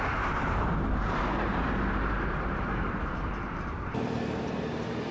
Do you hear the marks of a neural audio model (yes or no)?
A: yes